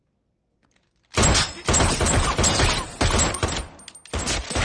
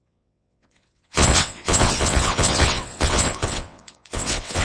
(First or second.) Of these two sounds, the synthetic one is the second